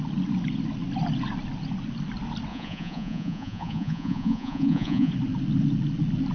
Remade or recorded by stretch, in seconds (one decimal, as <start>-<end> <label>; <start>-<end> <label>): 0.0-2.5 recorded; 2.5-5.1 remade; 5.1-6.3 recorded